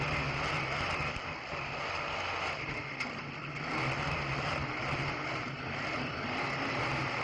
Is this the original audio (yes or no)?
yes